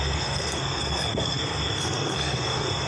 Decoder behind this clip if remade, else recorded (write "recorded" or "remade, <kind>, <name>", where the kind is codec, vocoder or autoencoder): remade, codec, SNAC